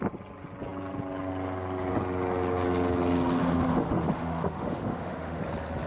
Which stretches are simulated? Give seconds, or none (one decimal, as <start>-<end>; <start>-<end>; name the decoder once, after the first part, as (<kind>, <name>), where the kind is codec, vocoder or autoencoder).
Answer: 3.4-5.4 (autoencoder, DAC-VAE)